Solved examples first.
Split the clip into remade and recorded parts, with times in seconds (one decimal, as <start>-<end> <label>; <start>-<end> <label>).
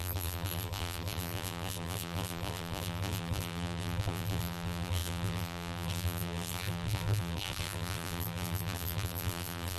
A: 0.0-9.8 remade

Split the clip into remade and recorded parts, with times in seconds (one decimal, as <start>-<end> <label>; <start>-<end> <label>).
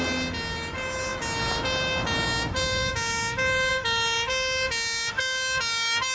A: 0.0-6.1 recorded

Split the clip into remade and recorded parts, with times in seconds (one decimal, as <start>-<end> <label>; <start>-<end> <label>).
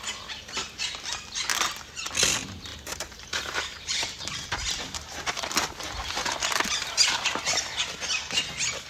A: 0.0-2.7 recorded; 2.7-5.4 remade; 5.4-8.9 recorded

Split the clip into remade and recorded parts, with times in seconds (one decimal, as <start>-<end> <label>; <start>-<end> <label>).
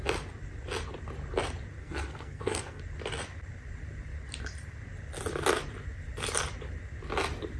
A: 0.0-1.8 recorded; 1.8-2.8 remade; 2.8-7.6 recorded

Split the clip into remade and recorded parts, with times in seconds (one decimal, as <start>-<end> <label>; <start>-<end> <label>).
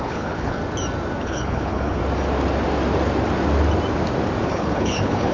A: 0.0-0.6 remade; 0.6-1.2 recorded; 1.2-2.0 remade; 2.0-4.5 recorded; 4.5-5.3 remade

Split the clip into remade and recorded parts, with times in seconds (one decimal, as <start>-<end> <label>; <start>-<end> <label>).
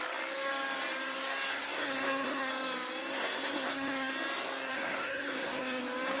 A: 0.0-1.5 recorded; 1.5-2.5 remade; 2.5-3.1 recorded; 3.1-4.1 remade; 4.1-4.7 recorded; 4.7-5.8 remade; 5.8-6.2 recorded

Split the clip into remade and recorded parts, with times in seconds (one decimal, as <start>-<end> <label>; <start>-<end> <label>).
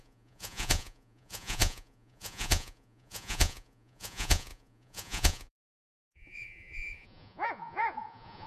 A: 0.0-8.5 remade